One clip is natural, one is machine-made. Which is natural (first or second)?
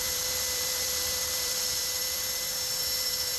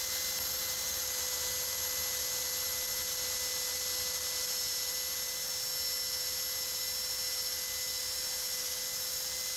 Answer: second